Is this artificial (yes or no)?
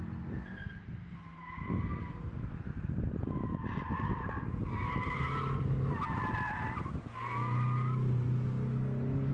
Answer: no